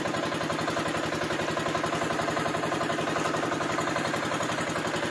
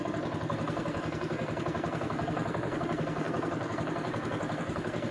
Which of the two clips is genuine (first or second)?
first